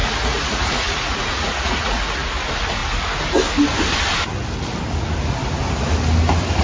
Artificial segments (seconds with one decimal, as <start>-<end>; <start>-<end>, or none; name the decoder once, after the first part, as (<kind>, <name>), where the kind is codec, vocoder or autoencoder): 0.0-2.3 (vocoder, Vocos)